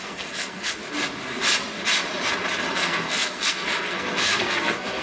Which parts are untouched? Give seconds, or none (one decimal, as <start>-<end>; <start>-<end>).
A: 0.8-2.7